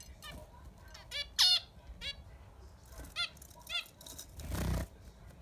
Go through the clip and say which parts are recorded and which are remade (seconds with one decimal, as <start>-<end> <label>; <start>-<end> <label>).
0.0-5.4 recorded